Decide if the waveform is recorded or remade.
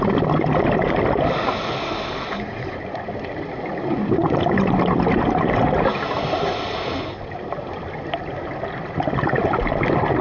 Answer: recorded